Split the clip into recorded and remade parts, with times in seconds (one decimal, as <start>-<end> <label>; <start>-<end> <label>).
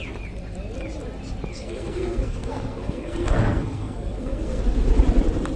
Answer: 0.0-1.5 recorded; 1.5-4.6 remade; 4.6-5.6 recorded